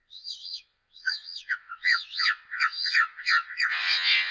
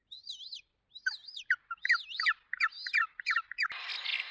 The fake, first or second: first